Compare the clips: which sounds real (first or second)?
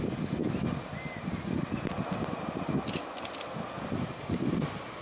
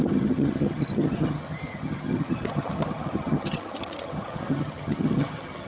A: first